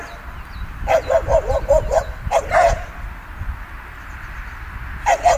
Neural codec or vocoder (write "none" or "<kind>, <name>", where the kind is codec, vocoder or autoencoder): none